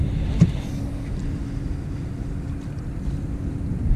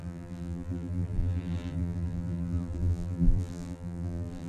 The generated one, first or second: second